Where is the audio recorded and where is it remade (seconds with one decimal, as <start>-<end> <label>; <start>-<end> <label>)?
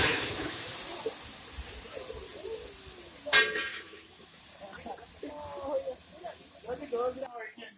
0.0-0.7 remade; 0.7-3.7 recorded; 3.7-4.4 remade; 4.4-7.8 recorded